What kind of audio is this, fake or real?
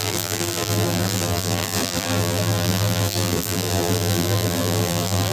fake